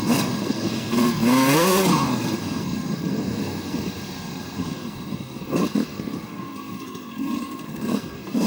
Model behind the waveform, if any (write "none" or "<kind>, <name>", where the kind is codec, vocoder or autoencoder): codec, SNAC